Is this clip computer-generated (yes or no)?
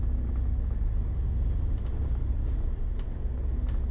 no